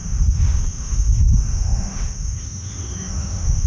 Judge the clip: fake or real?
fake